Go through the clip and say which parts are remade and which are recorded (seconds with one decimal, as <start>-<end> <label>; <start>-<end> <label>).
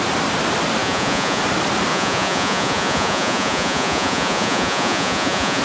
0.0-0.8 recorded; 0.8-1.4 remade; 1.4-1.9 recorded; 1.9-5.6 remade